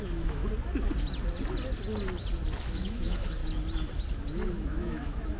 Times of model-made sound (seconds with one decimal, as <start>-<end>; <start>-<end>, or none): 0.0-0.4; 2.6-3.4; 4.5-5.4